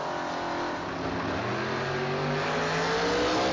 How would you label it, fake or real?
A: real